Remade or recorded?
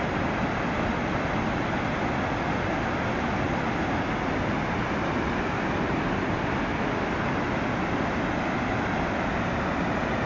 recorded